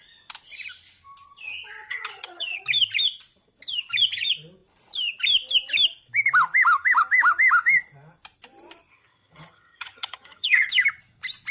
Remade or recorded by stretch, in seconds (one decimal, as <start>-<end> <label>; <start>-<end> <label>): 0.0-1.9 recorded; 1.9-2.6 remade; 2.6-8.9 recorded; 8.9-10.7 remade; 10.7-11.5 recorded